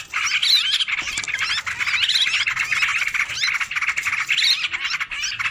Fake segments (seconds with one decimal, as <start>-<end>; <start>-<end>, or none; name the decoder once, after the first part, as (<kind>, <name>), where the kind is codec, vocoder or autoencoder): none